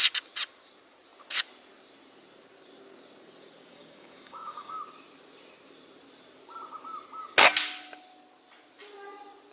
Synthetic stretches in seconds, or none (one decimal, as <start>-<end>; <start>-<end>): 3.7-4.8